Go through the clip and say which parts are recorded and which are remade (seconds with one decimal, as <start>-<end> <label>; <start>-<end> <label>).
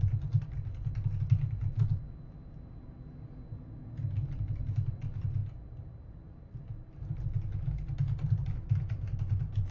0.0-5.4 recorded; 5.4-7.0 remade; 7.0-9.7 recorded